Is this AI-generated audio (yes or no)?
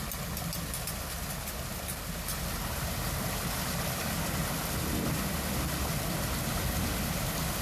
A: no